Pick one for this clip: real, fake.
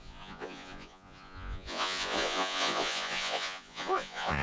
fake